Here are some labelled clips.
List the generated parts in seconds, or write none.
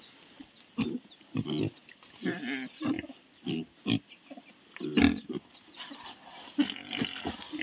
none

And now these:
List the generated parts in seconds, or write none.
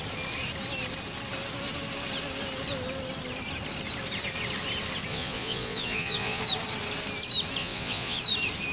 5.1-6.4 (vocoder, Vocos); 7.6-8.2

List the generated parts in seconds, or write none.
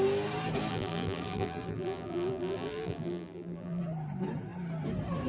0.7-3.8 (vocoder, BigVGAN v2)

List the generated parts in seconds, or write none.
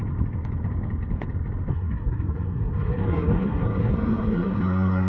1.7-5.1 (codec, SNAC)